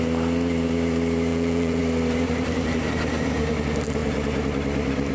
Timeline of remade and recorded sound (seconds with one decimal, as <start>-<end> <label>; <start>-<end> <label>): 0.0-1.3 recorded; 1.3-1.8 remade; 1.8-5.1 recorded

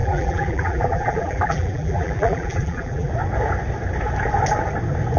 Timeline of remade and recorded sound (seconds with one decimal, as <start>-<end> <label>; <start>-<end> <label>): 0.0-3.1 remade; 3.1-5.2 recorded

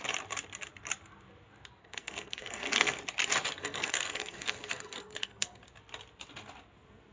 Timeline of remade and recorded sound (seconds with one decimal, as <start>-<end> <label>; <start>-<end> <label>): 0.0-1.8 recorded; 1.8-3.0 remade; 3.0-3.6 recorded; 3.6-5.6 remade; 5.6-7.1 recorded

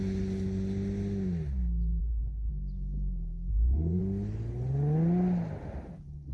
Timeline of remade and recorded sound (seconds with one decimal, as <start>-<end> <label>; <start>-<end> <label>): 0.0-2.0 recorded; 2.0-2.5 remade; 2.5-3.5 recorded; 3.5-4.0 remade; 4.0-6.3 recorded

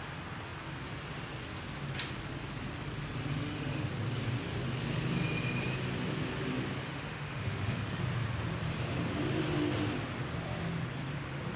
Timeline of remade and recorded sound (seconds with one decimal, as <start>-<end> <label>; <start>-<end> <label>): 0.0-3.3 recorded; 3.3-3.9 remade; 3.9-6.8 recorded; 6.8-8.0 remade; 8.0-11.6 recorded